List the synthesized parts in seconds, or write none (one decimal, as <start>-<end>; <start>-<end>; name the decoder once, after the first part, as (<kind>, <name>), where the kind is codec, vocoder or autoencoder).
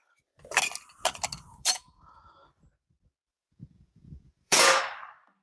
1.5-2.1 (vocoder, Vocos); 3.3-4.8